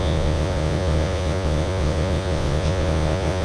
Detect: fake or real fake